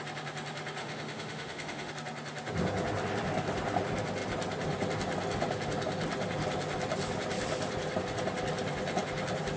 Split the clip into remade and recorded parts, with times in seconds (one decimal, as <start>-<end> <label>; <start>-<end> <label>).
0.0-0.8 recorded; 0.8-1.9 remade; 1.9-9.6 recorded